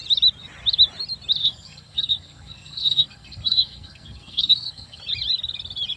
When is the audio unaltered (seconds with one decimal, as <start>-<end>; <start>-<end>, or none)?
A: 0.0-1.4; 5.0-6.0